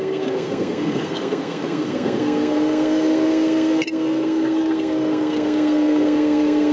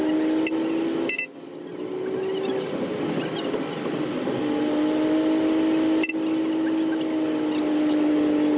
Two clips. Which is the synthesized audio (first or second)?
first